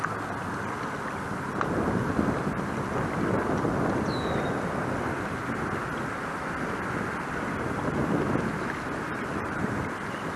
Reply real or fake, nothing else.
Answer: real